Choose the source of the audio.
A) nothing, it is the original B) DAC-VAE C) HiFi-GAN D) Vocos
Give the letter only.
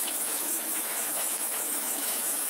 B